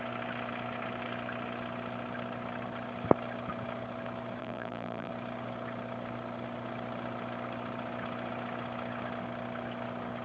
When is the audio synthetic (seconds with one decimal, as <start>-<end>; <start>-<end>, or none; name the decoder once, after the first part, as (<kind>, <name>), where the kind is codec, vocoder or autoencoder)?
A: 4.4-5.1 (vocoder, BigVGAN v2)